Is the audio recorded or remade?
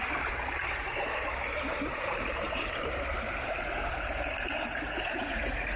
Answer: remade